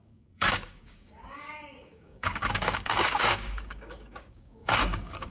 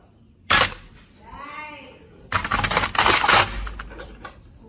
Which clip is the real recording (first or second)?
second